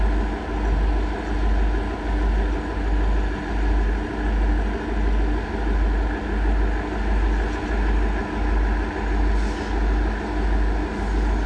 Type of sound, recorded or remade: recorded